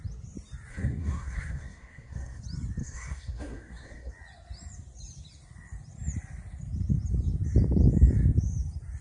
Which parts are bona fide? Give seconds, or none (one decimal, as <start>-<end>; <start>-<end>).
0.0-0.7; 2.4-2.8; 4.1-9.0